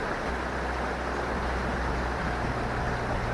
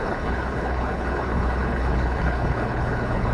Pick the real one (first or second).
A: first